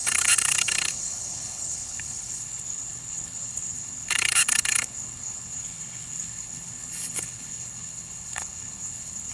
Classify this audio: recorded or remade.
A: remade